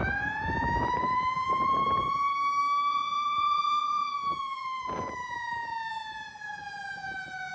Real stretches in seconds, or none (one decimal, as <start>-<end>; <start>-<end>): 2.3-2.9